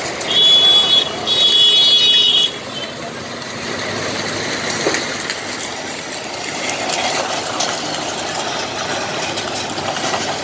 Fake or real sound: real